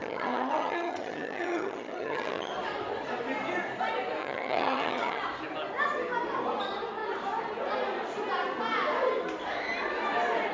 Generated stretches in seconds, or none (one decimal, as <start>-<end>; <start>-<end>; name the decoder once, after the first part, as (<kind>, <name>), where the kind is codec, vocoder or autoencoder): 0.0-2.5 (vocoder, HiFi-GAN); 4.2-5.2